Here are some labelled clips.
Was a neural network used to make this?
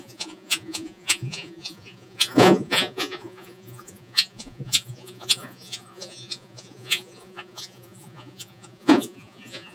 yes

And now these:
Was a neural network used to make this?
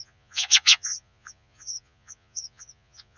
yes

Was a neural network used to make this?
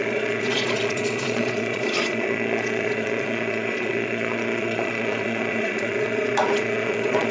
yes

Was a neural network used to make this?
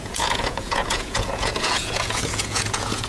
yes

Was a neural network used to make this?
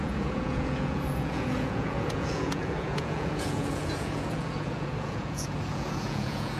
yes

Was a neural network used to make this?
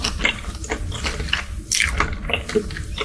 no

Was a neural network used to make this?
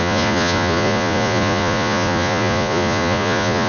yes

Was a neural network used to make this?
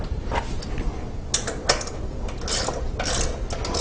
no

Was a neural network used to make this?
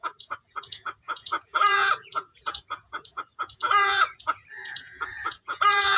yes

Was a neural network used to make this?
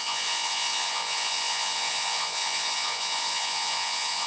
yes